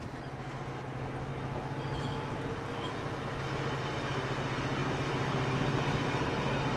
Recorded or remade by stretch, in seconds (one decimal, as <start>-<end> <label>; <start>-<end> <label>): 0.0-4.8 recorded; 4.8-6.3 remade; 6.3-6.8 recorded